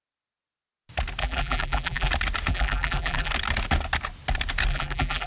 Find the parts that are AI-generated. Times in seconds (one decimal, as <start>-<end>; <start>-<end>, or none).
1.2-2.1; 2.5-3.3; 4.7-5.3